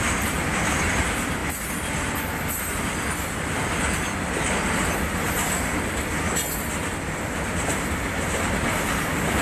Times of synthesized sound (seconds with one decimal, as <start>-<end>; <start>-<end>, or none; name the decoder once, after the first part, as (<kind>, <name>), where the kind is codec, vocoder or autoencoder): none